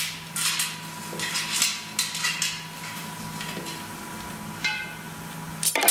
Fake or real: real